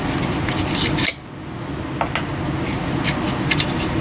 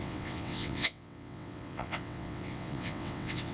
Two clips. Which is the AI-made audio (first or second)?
second